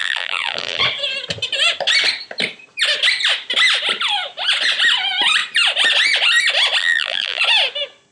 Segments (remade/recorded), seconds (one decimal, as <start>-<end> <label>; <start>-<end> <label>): 0.0-0.8 remade; 0.8-6.8 recorded; 6.8-7.4 remade; 7.4-8.1 recorded